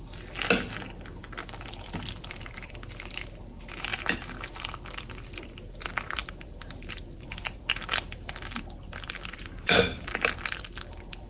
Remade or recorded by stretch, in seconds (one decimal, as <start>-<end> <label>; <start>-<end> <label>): 0.0-1.4 recorded; 1.4-2.7 remade; 2.7-6.2 recorded; 6.2-11.3 remade